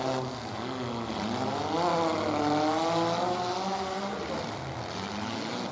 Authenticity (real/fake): real